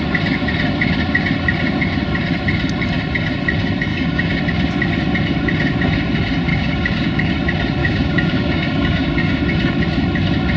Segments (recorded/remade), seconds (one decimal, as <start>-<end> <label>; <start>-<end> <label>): 0.0-3.9 recorded; 3.9-4.4 remade; 4.4-6.5 recorded; 6.5-7.3 remade; 7.3-7.8 recorded; 7.8-9.4 remade; 9.4-10.6 recorded